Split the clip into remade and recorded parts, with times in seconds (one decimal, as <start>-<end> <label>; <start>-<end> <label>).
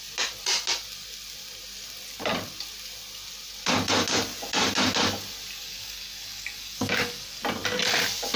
0.0-5.6 recorded; 5.6-7.4 remade; 7.4-8.4 recorded